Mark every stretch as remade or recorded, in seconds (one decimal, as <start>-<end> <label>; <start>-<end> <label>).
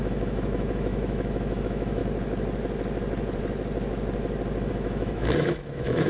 0.0-2.0 remade; 2.0-4.7 recorded; 4.7-6.1 remade